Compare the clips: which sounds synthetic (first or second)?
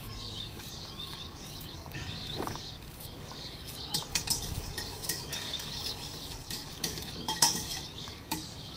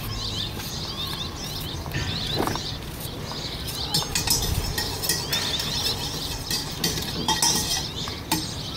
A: first